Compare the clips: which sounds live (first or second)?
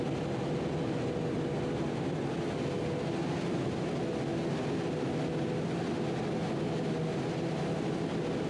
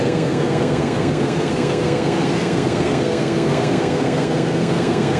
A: first